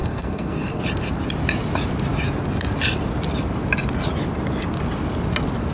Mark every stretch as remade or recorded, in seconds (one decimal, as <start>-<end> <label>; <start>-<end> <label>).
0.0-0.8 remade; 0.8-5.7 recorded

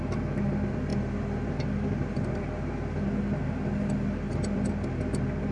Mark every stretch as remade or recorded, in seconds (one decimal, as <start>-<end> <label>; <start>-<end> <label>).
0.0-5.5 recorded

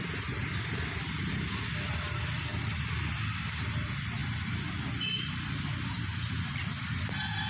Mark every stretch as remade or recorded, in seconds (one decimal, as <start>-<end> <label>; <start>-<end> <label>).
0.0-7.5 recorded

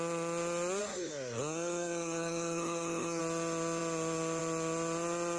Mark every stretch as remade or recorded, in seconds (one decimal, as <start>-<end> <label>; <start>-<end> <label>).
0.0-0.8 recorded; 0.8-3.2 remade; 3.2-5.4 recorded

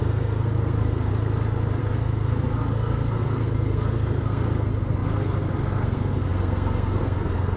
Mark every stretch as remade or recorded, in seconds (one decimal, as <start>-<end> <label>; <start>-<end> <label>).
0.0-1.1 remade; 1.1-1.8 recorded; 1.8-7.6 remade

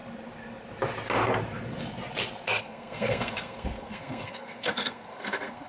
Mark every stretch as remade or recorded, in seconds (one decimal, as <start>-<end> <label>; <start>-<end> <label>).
0.0-2.6 recorded; 2.6-5.7 remade